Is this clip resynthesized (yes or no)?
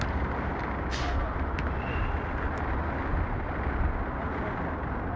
no